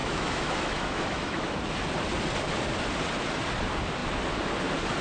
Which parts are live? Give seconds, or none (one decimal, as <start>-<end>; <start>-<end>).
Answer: 1.6-5.0